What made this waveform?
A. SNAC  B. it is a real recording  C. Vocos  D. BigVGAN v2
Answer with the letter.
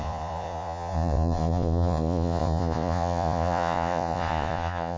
C